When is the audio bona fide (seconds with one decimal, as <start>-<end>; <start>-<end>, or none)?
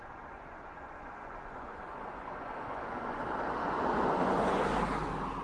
3.2-3.6; 4.6-5.4